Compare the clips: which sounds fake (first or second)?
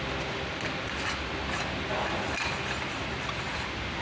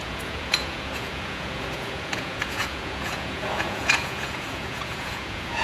second